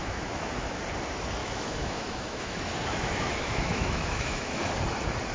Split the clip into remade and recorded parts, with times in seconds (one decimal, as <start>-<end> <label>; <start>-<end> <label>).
0.0-0.8 remade; 0.8-1.4 recorded; 1.4-4.6 remade; 4.6-5.3 recorded